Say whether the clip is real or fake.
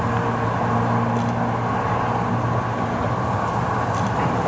real